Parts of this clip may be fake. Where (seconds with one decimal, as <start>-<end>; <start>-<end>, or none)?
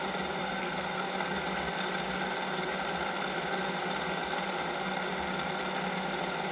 0.4-1.0